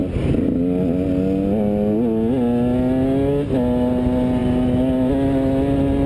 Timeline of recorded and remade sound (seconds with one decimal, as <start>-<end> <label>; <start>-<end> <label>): 0.0-6.1 recorded